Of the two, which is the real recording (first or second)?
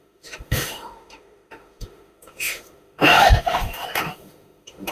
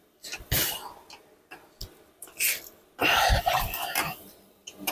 second